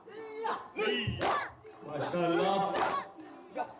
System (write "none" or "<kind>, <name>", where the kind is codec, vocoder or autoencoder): vocoder, BigVGAN v2